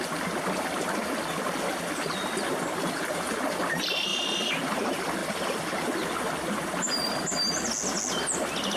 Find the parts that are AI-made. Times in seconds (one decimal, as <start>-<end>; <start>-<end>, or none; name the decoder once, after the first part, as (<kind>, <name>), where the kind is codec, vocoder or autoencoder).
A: none

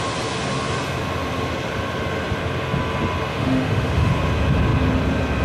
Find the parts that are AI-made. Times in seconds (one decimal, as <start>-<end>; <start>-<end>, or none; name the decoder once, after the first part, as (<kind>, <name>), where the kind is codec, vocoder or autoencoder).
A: 3.3-4.1 (autoencoder, DAC-VAE)